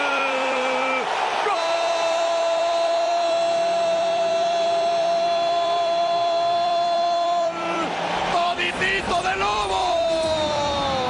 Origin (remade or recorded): remade